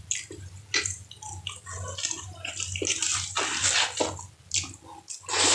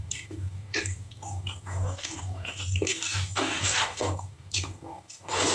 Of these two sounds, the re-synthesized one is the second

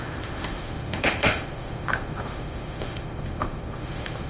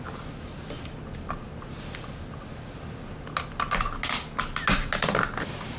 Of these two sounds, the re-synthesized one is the first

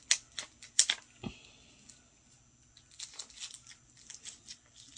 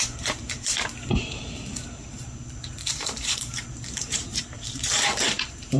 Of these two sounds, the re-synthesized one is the second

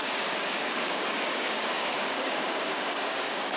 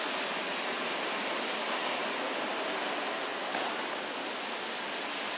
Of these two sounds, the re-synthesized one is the first